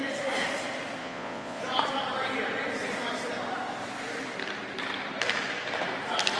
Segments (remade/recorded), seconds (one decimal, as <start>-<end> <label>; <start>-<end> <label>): 0.0-1.0 recorded; 1.0-1.6 remade; 1.6-6.4 recorded